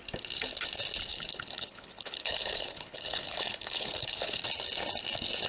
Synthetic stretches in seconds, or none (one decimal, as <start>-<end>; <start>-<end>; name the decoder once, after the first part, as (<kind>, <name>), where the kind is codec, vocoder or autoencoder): 1.1-4.4 (codec, HILCodec)